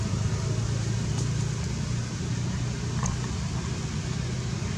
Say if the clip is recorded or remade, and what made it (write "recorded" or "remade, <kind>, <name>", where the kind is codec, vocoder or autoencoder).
recorded